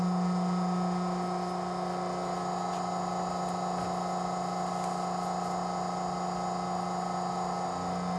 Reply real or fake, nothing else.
real